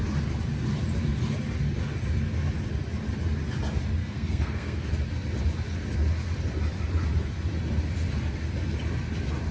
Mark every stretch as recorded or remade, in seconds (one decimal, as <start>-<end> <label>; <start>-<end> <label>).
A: 0.0-4.0 recorded; 4.0-4.9 remade; 4.9-9.5 recorded